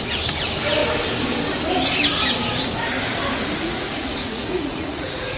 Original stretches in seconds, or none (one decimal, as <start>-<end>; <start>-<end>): 0.0-3.6